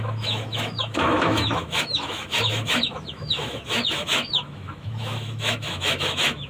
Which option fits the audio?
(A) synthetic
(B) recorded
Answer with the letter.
A